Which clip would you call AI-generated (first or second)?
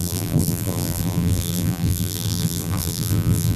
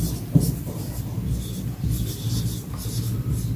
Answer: first